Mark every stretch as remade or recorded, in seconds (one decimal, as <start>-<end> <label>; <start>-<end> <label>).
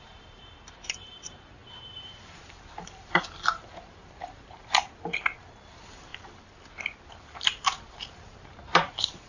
0.0-6.1 remade; 6.1-7.1 recorded; 7.1-9.3 remade